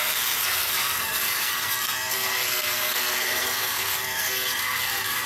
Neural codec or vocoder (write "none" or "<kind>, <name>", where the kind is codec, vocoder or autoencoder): codec, SNAC